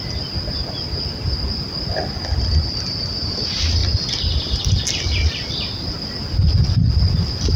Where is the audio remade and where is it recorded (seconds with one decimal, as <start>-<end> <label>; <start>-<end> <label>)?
0.0-7.6 recorded